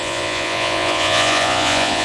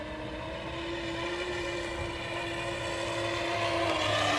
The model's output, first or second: first